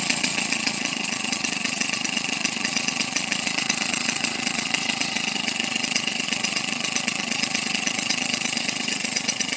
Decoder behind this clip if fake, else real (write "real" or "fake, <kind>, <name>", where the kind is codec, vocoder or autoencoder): fake, vocoder, Vocos